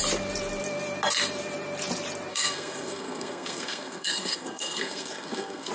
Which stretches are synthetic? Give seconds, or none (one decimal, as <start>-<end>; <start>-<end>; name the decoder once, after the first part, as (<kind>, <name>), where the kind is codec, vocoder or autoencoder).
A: 2.3-5.7 (codec, SNAC)